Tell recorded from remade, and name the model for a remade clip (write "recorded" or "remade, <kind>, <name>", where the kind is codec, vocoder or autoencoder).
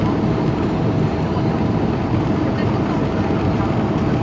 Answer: recorded